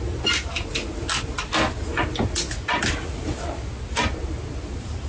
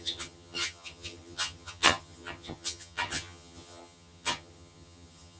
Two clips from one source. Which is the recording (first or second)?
first